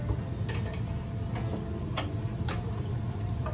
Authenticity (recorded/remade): recorded